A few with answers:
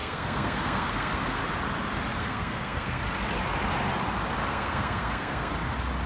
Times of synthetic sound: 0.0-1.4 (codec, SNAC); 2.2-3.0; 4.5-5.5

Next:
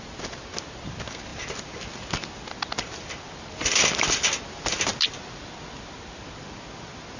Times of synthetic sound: none

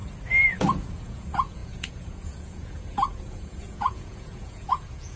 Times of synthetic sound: 0.5-5.2 (vocoder, Vocos)

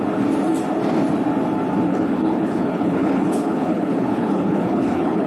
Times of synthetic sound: 1.9-5.3 (codec, HILCodec)